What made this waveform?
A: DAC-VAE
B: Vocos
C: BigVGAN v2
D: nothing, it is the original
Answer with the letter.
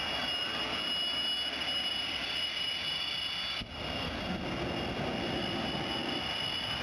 D